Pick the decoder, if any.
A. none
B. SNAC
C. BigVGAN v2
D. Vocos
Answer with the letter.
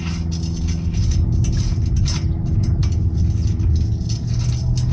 A